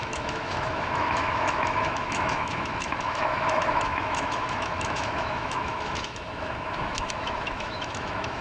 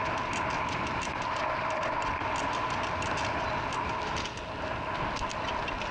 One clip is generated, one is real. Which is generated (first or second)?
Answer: first